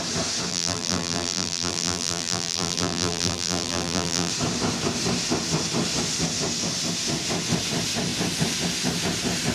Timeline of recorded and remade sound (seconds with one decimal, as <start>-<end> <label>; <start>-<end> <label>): 0.0-0.5 recorded; 0.5-4.3 remade; 4.3-9.5 recorded

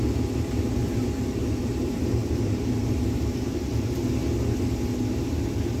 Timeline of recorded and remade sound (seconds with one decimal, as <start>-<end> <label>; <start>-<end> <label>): 0.0-0.8 recorded; 0.8-4.1 remade; 4.1-5.8 recorded

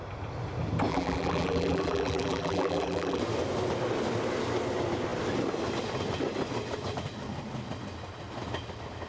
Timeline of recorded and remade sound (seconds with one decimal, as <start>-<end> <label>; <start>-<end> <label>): 0.0-0.9 recorded; 0.9-3.2 remade; 3.2-9.1 recorded

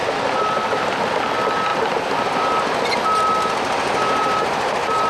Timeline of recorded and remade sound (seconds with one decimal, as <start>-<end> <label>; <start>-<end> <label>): 0.0-1.1 remade; 1.1-1.7 recorded; 1.7-2.4 remade; 2.4-5.1 recorded

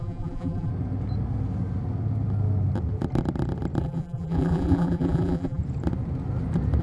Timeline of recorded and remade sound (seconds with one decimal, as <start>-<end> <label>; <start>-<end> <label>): 0.0-0.7 remade; 0.7-3.8 recorded; 3.8-5.6 remade; 5.6-6.8 recorded

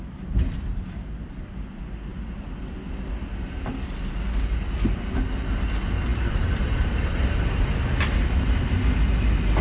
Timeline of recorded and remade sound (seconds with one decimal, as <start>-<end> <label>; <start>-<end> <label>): 0.0-6.1 recorded; 6.1-7.5 remade; 7.5-9.6 recorded

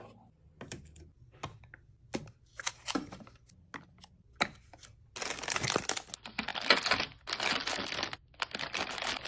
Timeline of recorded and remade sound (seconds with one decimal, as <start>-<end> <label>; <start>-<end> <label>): 0.0-9.3 recorded

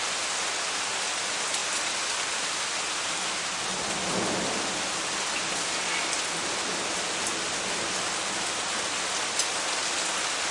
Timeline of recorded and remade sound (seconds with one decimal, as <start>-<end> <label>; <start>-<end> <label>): 0.0-10.5 recorded